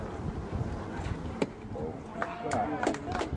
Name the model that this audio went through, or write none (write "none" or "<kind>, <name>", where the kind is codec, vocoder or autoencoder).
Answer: none